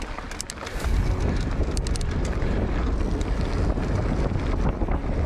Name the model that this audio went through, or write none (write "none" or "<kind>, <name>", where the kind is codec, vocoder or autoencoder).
none